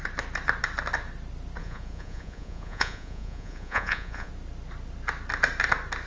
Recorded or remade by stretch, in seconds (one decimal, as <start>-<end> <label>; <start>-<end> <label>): 0.0-1.6 recorded; 1.6-4.3 remade; 4.3-6.1 recorded